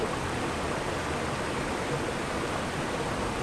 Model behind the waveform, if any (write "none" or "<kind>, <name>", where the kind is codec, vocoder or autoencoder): none